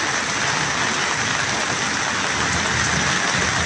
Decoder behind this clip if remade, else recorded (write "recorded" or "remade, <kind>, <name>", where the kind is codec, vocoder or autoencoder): recorded